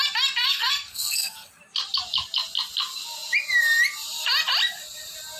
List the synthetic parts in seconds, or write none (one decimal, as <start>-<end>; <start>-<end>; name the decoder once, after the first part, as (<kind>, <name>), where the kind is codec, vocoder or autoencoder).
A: 0.4-1.5 (codec, SNAC)